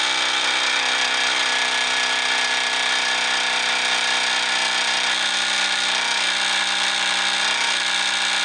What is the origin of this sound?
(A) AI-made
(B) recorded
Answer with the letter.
B